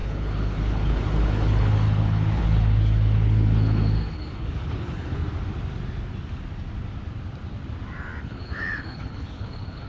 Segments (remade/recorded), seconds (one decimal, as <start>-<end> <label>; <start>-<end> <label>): 0.0-5.2 remade; 5.2-8.2 recorded; 8.2-9.9 remade